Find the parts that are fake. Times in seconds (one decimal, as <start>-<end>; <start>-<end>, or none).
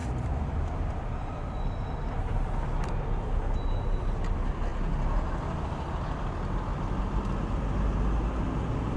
0.0-1.0